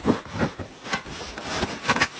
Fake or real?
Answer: real